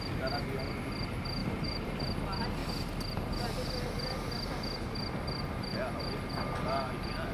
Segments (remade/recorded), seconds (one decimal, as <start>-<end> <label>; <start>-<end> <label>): 0.0-1.4 recorded; 1.4-2.0 remade; 2.0-7.3 recorded